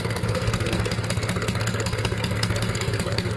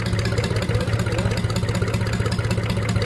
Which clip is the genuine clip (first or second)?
second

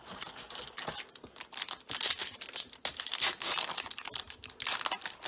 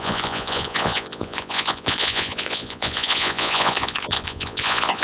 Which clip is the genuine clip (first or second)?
first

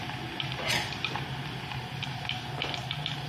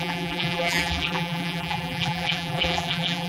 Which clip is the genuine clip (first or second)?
first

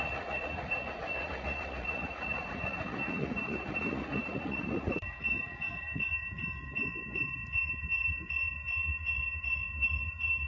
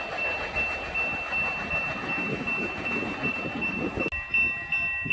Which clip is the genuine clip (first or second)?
second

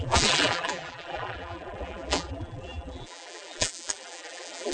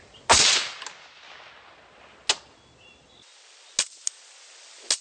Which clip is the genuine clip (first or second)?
second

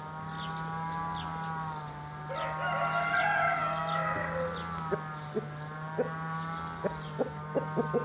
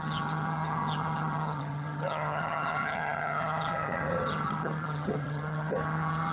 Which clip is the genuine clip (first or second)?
first